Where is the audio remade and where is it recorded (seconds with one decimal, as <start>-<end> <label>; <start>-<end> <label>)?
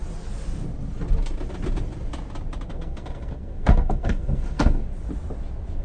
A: 0.0-2.7 recorded; 2.7-4.8 remade; 4.8-5.8 recorded